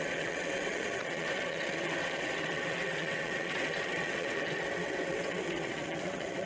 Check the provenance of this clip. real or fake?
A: fake